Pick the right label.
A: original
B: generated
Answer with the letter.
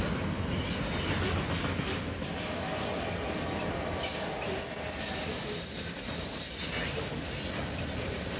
A